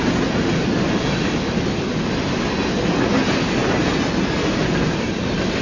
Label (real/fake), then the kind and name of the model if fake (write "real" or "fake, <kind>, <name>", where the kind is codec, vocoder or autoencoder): real